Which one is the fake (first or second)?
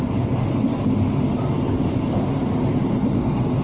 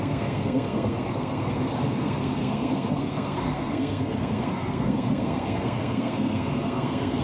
second